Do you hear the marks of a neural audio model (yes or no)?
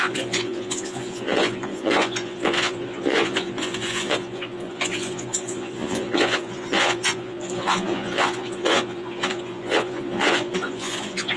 yes